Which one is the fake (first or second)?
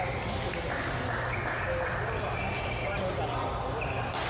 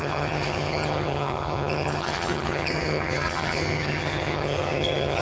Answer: second